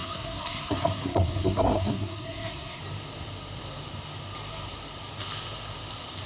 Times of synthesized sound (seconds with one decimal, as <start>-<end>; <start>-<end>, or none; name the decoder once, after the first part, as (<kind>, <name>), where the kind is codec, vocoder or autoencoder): 0.0-2.8 (codec, SNAC)